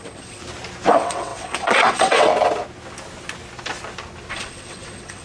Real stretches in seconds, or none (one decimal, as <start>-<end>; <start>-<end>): 0.4-0.9; 2.3-4.3